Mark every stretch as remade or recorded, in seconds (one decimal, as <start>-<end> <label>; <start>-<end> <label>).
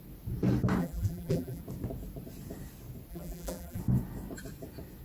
0.0-0.8 recorded; 0.8-1.6 remade; 1.6-3.1 recorded; 3.1-3.8 remade; 3.8-5.0 recorded